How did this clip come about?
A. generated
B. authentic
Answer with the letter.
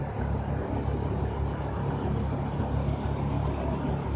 B